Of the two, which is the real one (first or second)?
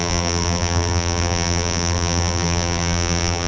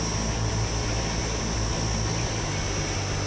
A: second